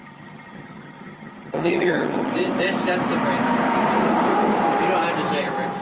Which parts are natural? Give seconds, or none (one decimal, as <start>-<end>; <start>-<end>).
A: 2.3-5.8